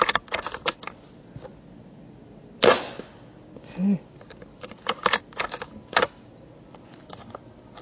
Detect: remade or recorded recorded